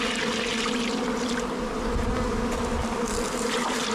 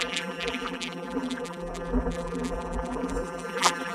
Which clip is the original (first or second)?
first